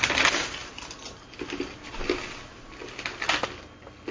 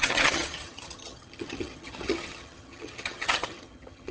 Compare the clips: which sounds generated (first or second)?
second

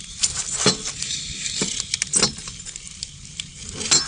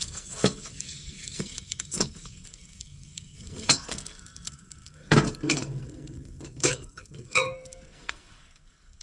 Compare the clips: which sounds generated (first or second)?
second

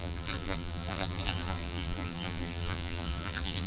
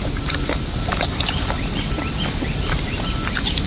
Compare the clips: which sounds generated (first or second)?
first